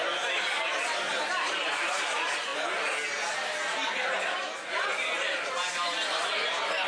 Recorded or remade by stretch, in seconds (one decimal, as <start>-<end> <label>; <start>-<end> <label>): 0.0-6.9 recorded